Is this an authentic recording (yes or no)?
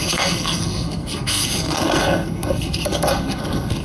no